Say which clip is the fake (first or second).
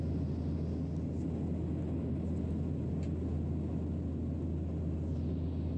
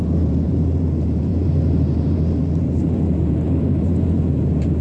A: second